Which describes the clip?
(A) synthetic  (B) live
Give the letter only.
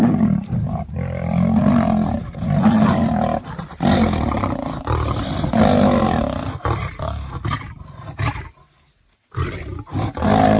B